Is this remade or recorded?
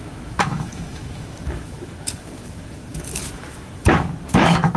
remade